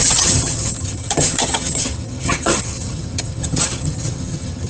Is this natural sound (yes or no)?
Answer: no